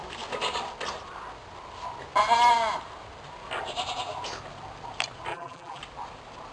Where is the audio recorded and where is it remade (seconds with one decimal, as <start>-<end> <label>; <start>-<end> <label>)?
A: 0.0-5.3 recorded; 5.3-5.8 remade; 5.8-6.5 recorded